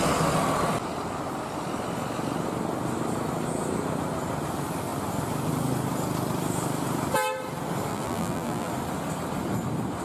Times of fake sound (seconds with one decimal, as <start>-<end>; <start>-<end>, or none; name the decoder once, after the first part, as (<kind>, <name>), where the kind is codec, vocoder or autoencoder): 7.9-8.7 (vocoder, BigVGAN v2)